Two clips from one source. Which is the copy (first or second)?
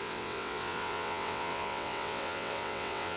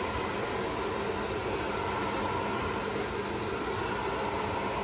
first